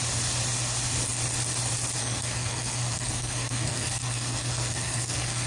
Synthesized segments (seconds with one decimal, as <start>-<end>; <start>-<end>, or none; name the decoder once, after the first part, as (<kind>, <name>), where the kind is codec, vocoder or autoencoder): 2.0-5.5 (codec, SNAC)